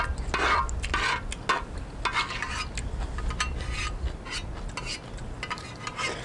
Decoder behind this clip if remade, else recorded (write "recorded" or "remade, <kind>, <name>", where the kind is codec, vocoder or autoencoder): recorded